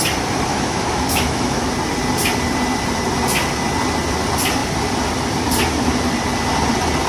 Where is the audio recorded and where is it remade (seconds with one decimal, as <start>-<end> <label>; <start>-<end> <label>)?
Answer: 0.0-0.5 recorded; 0.5-1.7 remade; 1.7-7.1 recorded